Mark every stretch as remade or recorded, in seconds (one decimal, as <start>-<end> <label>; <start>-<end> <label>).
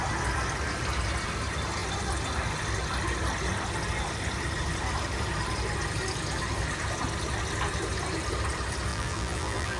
0.0-8.9 recorded; 8.9-9.8 remade